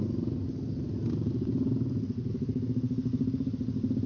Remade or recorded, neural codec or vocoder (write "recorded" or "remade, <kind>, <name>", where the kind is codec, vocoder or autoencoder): recorded